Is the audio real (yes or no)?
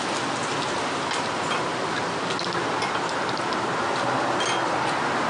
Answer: yes